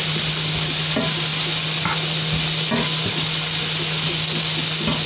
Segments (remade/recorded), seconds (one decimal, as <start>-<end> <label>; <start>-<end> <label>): 0.0-5.1 recorded